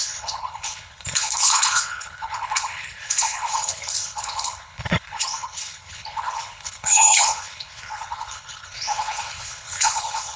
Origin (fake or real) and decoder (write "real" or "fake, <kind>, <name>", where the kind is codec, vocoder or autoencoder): fake, codec, HILCodec